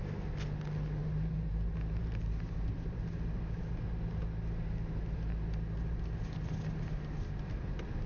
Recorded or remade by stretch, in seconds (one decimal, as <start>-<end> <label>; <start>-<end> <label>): 0.0-1.0 recorded; 1.0-3.0 remade; 3.0-8.1 recorded